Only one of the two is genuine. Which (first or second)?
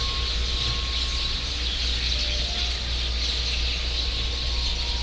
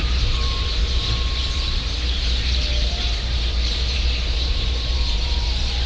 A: first